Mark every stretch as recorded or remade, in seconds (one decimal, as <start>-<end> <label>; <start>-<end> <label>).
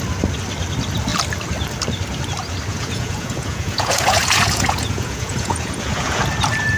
0.0-2.7 recorded; 2.7-6.2 remade; 6.2-6.8 recorded